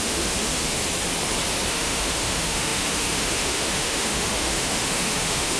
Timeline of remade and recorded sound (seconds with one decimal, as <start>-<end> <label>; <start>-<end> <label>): 0.0-0.8 remade; 0.8-1.7 recorded; 1.7-5.6 remade